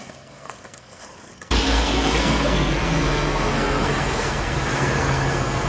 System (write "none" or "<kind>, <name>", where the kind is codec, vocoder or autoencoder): codec, SNAC